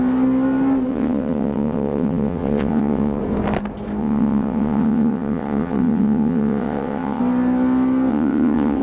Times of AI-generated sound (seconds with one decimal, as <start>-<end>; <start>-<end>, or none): 0.9-3.2; 4.0-7.2; 8.1-8.8